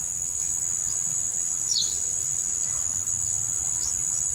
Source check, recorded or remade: recorded